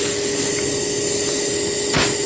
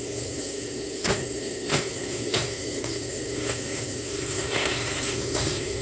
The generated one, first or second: second